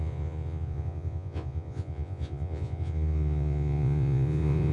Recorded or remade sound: remade